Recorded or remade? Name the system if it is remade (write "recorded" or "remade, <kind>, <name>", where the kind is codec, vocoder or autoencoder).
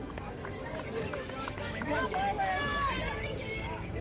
remade, codec, DAC